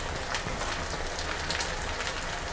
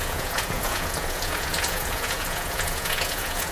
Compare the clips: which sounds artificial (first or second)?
second